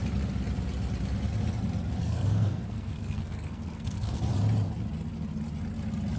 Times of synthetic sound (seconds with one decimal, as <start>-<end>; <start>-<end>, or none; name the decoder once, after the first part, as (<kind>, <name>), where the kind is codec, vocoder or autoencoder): 2.0-4.2 (codec, SNAC)